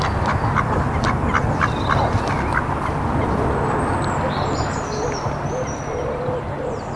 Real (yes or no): yes